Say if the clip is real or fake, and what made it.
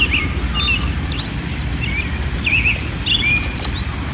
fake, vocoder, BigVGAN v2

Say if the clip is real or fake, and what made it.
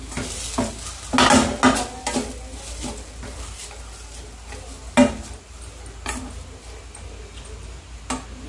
real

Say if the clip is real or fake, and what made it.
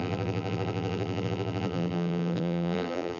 fake, vocoder, BigVGAN v2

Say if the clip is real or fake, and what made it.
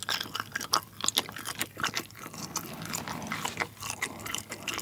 real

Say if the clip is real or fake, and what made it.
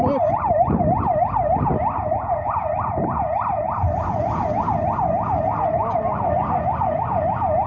real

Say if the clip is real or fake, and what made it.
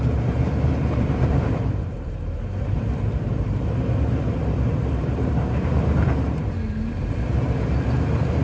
fake, vocoder, BigVGAN v2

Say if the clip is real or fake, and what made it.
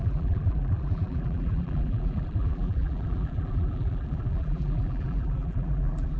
fake, vocoder, BigVGAN v2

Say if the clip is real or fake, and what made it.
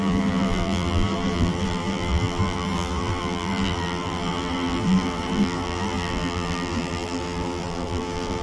fake, vocoder, BigVGAN v2